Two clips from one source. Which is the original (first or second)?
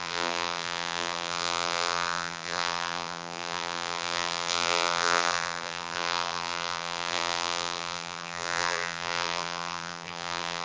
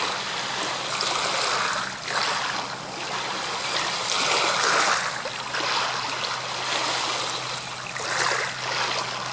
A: second